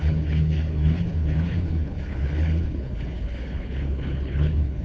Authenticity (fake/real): fake